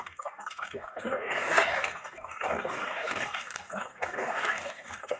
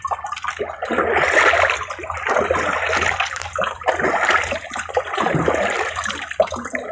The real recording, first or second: second